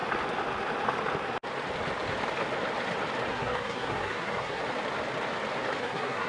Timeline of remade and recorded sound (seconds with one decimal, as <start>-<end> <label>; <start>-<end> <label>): 0.0-3.3 recorded; 3.3-4.6 remade; 4.6-5.8 recorded; 5.8-6.3 remade